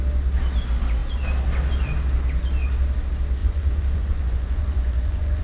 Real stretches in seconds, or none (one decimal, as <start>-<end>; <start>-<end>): 0.0-3.4